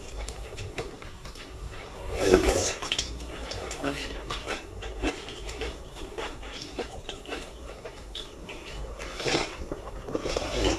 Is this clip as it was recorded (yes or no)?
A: no